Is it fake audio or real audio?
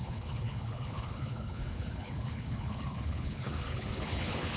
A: fake